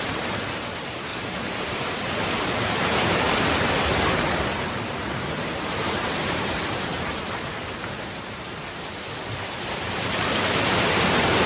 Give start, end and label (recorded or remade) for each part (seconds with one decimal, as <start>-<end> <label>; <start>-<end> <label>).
0.0-1.1 recorded; 1.1-3.2 remade; 3.2-5.4 recorded; 5.4-10.3 remade; 10.3-11.5 recorded